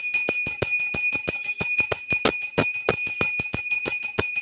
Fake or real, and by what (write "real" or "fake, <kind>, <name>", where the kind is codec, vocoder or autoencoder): real